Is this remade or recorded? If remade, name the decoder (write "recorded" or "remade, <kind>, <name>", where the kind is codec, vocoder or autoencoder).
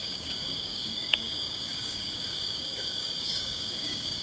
remade, codec, DAC